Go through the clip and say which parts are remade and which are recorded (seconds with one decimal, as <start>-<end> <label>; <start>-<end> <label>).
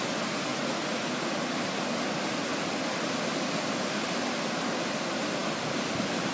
0.0-0.5 recorded; 0.5-1.3 remade; 1.3-6.3 recorded